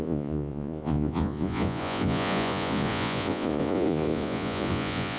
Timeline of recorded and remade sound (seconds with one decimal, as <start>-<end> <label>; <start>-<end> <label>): 0.0-5.2 remade